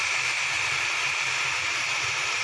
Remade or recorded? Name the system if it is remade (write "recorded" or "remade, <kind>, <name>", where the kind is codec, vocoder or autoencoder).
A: remade, vocoder, BigVGAN v2